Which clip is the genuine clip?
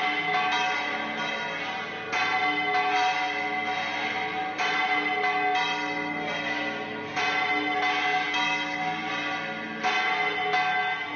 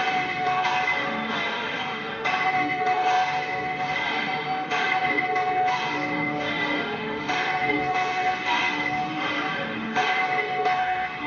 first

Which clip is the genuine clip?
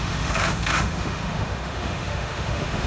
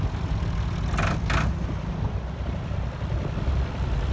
second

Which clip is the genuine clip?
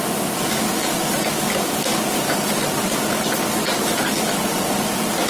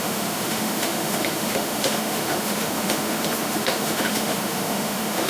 first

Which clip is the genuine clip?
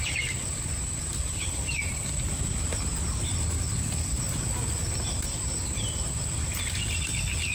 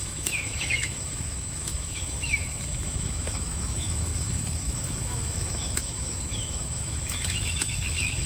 first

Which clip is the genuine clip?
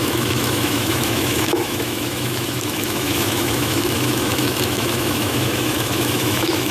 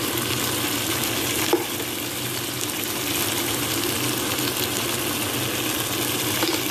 second